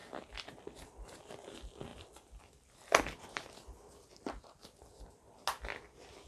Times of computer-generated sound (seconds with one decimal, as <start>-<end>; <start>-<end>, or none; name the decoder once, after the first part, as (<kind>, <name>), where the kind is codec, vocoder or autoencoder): none